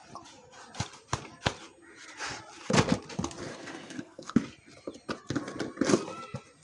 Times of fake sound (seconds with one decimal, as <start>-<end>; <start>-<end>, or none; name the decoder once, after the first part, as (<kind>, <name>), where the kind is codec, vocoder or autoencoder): 3.5-4.4 (codec, SNAC)